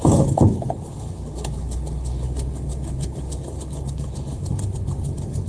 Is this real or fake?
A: fake